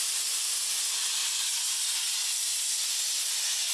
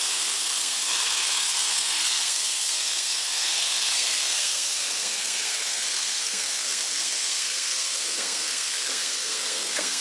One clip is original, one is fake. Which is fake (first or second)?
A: second